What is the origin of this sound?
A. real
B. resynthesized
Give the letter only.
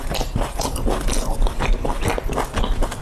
A